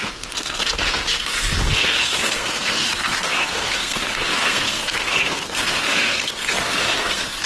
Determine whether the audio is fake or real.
fake